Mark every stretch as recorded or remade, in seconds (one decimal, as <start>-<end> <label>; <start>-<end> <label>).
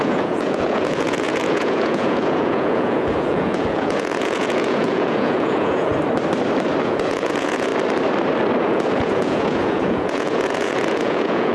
0.0-5.9 remade; 5.9-6.8 recorded; 6.8-7.7 remade; 7.7-8.6 recorded; 8.6-11.5 remade